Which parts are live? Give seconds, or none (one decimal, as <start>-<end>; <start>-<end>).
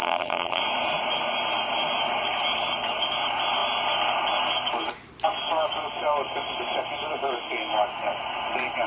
0.6-8.9